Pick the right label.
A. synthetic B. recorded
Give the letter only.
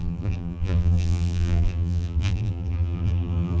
A